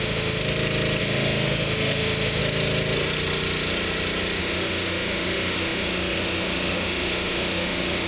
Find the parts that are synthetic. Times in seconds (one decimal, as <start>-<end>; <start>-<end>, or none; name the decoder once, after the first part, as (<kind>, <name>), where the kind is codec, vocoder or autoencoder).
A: 0.0-0.4 (autoencoder, DAC-VAE); 1.0-2.4; 4.4-8.1